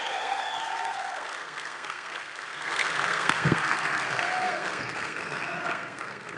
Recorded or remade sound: remade